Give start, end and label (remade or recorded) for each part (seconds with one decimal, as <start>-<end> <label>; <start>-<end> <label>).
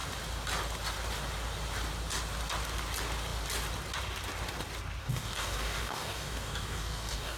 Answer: 0.0-5.0 recorded; 5.0-7.4 remade